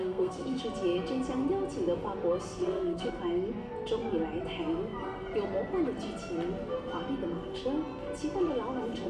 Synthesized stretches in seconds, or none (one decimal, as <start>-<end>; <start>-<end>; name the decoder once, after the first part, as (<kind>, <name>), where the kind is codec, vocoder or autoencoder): 0.0-0.6 (codec, SNAC); 2.6-3.2